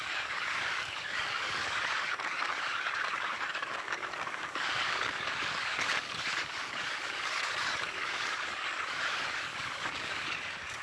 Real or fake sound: fake